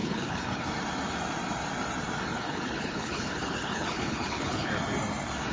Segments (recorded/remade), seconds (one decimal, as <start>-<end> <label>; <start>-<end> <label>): 0.0-0.6 remade; 0.6-2.3 recorded; 2.3-4.7 remade; 4.7-5.5 recorded